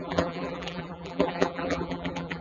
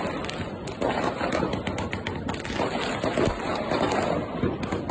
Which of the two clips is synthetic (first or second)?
first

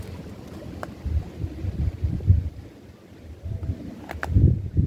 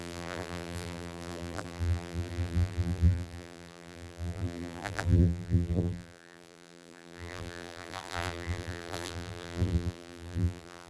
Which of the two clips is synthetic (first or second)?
second